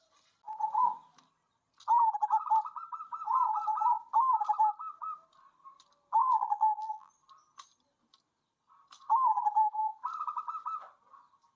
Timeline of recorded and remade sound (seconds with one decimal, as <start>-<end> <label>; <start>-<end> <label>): 0.0-6.2 recorded; 6.2-7.1 remade; 7.1-11.6 recorded